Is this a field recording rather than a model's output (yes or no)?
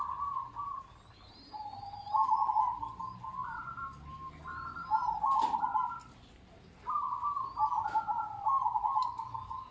yes